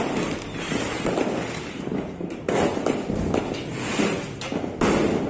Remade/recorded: recorded